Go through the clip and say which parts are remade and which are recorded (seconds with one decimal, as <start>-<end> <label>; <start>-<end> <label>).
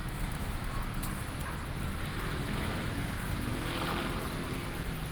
0.0-0.8 remade; 0.8-2.1 recorded; 2.1-3.1 remade; 3.1-5.1 recorded